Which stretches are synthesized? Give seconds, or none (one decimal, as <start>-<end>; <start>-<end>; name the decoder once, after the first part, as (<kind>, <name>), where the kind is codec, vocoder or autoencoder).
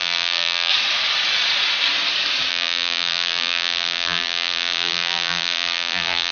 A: 0.0-0.7 (vocoder, BigVGAN v2); 2.5-6.3